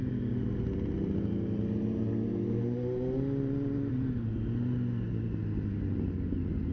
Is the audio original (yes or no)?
yes